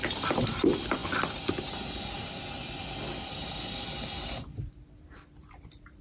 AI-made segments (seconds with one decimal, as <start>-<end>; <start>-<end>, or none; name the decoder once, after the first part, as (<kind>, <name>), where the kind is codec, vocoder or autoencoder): 0.0-1.0 (vocoder, BigVGAN v2); 4.6-6.0